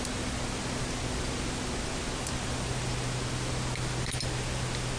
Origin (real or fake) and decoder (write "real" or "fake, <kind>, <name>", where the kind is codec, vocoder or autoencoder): real